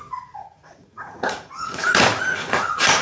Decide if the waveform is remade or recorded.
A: remade